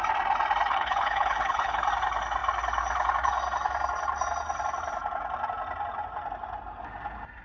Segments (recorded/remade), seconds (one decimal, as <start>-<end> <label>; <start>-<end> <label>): 0.0-0.7 recorded; 0.7-1.8 remade; 1.8-7.4 recorded